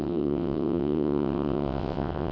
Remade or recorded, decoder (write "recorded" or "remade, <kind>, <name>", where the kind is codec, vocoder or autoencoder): remade, vocoder, WaveNeXt